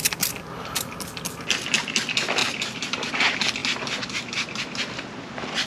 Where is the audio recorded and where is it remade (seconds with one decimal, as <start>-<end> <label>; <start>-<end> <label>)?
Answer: 0.0-5.7 recorded